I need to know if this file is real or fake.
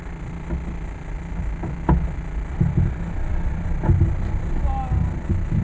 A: real